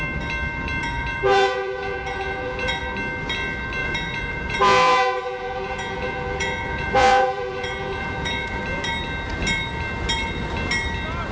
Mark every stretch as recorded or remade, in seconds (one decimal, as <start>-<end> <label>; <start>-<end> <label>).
0.0-0.8 recorded; 0.8-2.8 remade; 2.8-3.8 recorded; 3.8-8.6 remade; 8.6-11.3 recorded